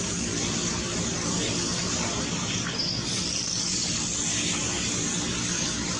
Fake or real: real